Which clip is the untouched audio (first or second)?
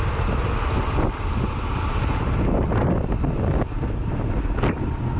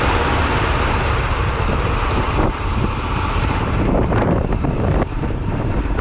first